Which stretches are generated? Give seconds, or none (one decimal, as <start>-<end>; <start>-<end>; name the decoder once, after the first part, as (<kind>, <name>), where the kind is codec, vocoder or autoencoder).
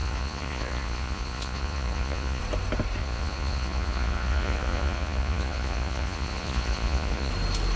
0.0-2.4 (vocoder, Vocos); 3.0-7.3